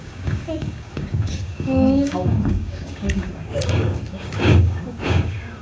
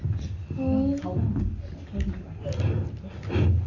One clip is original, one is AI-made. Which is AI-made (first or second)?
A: first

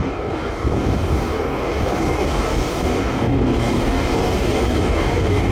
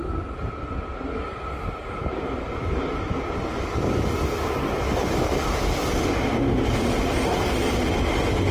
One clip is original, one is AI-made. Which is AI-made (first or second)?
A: first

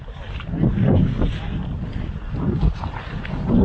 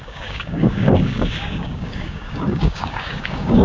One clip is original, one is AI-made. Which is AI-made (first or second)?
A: second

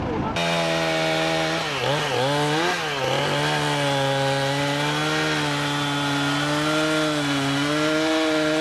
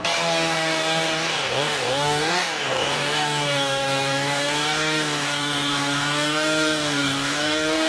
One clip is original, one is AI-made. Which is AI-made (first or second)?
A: second